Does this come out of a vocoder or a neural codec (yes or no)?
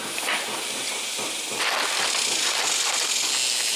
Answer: no